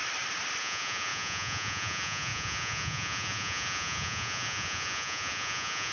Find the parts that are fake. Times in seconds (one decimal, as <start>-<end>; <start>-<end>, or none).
0.6-5.9